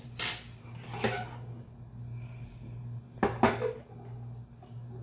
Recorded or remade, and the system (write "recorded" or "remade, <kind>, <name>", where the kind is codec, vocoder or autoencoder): recorded